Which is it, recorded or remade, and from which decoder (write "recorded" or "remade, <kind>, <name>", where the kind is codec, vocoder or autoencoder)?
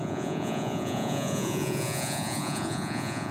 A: remade, vocoder, Vocos